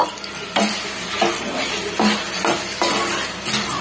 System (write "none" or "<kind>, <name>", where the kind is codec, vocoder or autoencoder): none